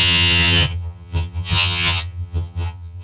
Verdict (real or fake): fake